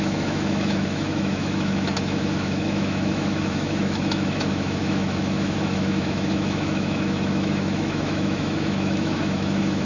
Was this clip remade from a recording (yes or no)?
yes